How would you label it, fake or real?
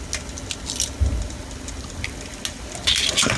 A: real